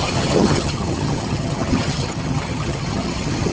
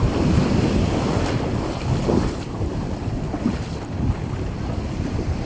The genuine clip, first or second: second